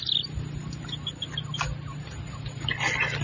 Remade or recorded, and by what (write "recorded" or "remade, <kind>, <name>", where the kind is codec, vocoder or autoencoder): recorded